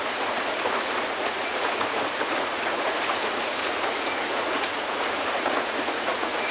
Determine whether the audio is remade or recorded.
remade